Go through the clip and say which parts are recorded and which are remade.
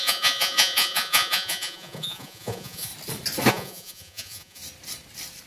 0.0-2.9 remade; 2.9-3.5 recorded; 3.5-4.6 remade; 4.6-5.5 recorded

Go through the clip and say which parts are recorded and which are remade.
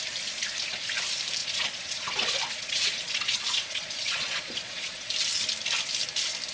0.0-1.4 recorded; 1.4-5.1 remade; 5.1-6.5 recorded